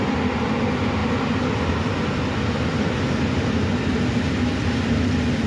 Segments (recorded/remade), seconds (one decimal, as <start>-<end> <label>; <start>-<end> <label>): 0.0-5.5 recorded